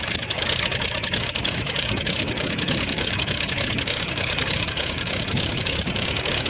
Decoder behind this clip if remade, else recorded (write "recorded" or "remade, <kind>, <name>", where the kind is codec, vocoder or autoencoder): remade, codec, DAC